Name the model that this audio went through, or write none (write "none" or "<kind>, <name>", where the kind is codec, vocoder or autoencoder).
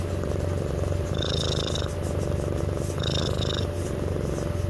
none